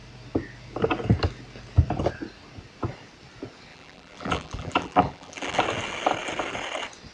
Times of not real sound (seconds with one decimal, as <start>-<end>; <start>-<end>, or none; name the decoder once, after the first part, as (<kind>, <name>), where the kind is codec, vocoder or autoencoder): 3.7-5.6 (vocoder, BigVGAN v2)